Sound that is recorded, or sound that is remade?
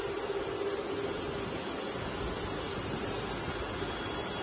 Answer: recorded